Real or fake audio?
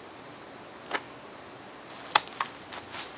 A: real